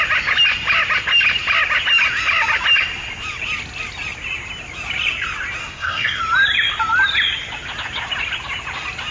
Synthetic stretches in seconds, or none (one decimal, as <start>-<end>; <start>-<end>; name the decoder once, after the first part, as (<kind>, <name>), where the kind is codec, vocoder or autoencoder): 5.6-6.2 (codec, SNAC)